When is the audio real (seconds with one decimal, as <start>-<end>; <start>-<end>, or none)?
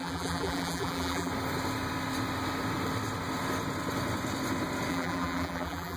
1.3-4.9